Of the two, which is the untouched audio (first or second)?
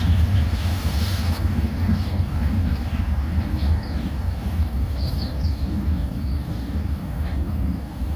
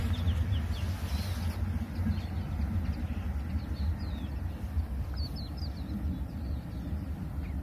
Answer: second